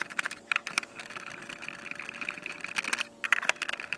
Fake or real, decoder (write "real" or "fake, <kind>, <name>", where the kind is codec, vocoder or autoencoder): real